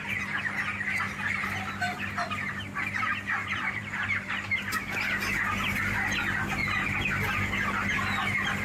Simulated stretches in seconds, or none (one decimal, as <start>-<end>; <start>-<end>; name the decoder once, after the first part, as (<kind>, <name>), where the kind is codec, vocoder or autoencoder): 3.4-4.3 (vocoder, BigVGAN v2)